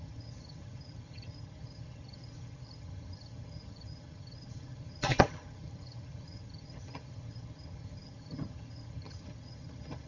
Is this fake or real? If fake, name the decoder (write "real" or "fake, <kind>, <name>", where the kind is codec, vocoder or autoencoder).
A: fake, vocoder, HiFi-GAN